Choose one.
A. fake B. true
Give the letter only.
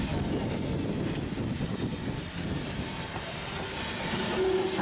B